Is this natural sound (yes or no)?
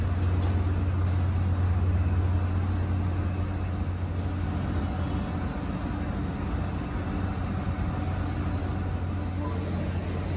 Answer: yes